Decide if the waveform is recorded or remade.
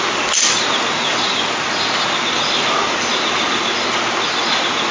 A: recorded